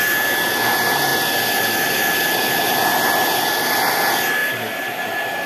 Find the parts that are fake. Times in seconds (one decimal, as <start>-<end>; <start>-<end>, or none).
none

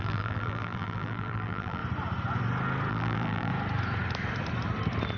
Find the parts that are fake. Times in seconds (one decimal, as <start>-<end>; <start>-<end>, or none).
0.0-1.8; 2.9-3.5

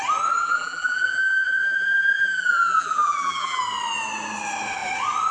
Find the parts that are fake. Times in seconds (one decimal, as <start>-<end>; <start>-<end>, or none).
0.4-3.6